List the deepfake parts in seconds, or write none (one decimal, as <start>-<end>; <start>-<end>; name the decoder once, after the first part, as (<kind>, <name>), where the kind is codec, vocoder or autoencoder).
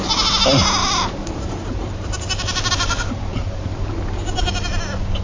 0.8-3.9 (vocoder, BigVGAN v2)